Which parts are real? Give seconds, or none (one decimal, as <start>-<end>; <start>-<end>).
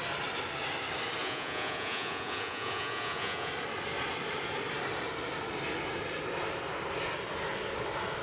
0.0-1.2; 3.5-8.2